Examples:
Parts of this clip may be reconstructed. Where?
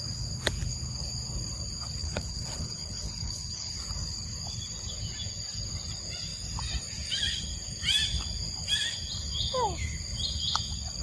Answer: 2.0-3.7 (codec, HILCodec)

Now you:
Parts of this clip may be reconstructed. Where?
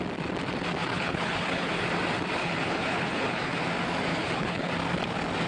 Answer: 0.8-1.7 (codec, HILCodec); 2.4-3.6; 4.1-4.7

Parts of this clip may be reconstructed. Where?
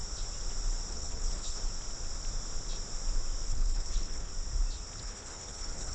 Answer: 0.9-1.6 (codec, HILCodec); 3.5-4.3; 5.0-5.9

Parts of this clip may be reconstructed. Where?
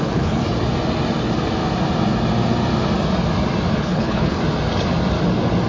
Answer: 0.0-0.4 (codec, HILCodec); 3.8-4.4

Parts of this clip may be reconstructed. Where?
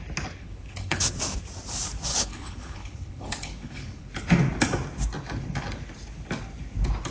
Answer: 0.4-1.2 (codec, HILCodec); 2.1-4.1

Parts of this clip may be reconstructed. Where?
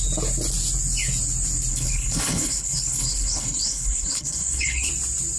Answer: 1.7-4.9 (codec, HILCodec)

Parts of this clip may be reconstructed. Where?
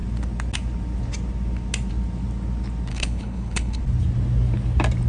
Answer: 2.9-3.8 (codec, HILCodec)